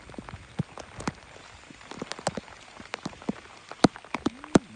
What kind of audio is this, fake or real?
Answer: real